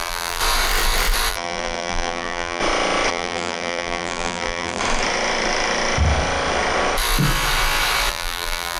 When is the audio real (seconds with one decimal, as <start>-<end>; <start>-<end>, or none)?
0.4-1.3; 2.6-3.1; 4.8-8.1